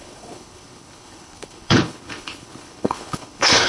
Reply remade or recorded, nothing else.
remade